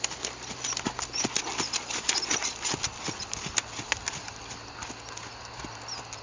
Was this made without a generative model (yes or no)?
yes